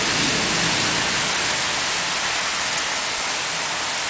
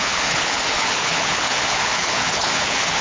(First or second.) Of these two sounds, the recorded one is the first